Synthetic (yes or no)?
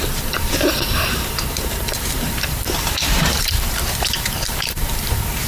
yes